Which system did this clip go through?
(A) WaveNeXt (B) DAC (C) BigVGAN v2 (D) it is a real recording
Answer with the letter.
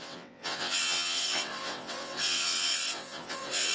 A